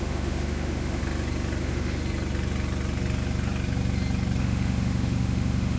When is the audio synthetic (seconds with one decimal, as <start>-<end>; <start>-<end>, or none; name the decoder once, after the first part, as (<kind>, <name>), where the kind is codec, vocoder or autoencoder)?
0.0-1.0 (autoencoder, DAC-VAE); 1.6-2.0; 4.4-5.8